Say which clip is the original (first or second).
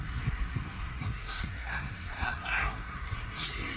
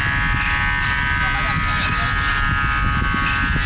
second